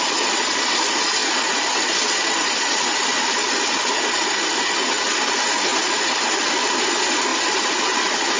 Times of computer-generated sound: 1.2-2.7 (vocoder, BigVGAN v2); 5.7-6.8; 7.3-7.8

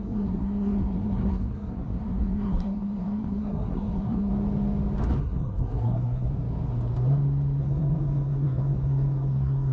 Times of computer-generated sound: 0.0-4.3 (codec, SNAC); 5.2-6.3; 7.6-9.7

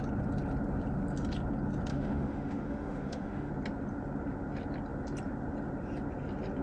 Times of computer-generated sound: 1.9-3.5 (autoencoder, DAC-VAE)

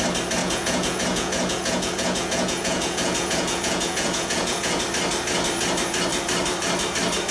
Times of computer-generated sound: 0.4-4.8 (vocoder, Vocos)